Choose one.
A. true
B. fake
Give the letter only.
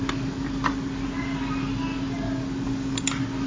A